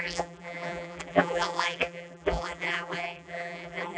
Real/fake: fake